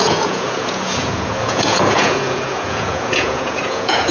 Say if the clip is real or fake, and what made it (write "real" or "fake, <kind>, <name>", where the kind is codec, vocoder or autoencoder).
fake, vocoder, Vocos